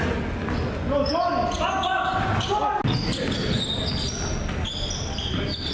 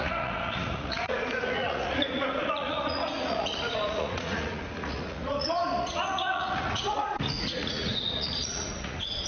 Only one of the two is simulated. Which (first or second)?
second